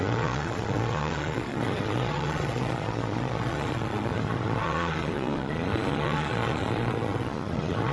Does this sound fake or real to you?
fake